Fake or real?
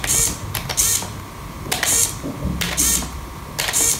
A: real